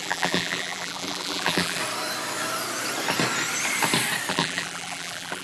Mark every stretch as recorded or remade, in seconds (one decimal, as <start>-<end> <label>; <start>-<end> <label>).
0.0-1.8 remade; 1.8-4.3 recorded; 4.3-5.4 remade